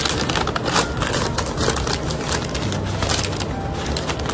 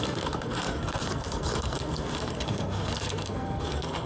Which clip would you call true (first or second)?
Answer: first